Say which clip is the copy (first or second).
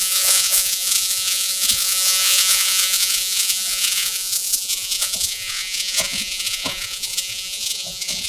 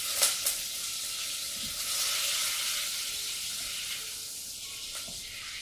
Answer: first